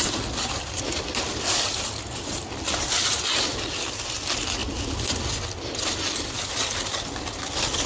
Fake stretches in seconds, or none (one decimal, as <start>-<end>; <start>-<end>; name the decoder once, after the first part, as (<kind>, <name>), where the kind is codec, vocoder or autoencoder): none